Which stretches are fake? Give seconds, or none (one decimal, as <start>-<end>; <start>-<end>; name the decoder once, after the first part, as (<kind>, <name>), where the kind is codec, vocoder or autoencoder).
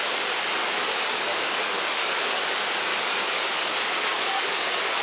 0.6-2.4 (codec, DAC); 2.9-5.0